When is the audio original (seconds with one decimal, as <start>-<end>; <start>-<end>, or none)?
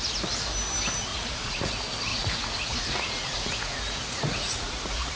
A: 0.0-1.1; 1.7-2.1